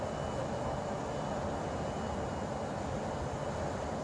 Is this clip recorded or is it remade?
recorded